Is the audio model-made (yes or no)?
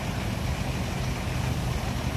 no